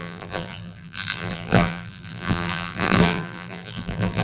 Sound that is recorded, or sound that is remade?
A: remade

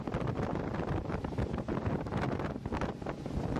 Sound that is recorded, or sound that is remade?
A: recorded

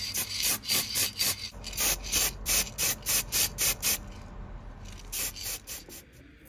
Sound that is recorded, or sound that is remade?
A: recorded